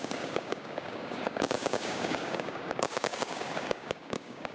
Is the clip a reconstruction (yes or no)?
yes